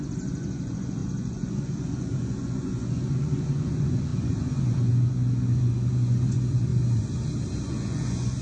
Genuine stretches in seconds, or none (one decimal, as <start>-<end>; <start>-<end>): 6.7-7.6